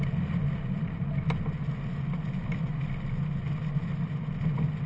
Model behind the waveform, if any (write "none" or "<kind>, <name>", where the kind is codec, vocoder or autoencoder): none